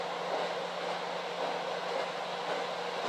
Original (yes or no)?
yes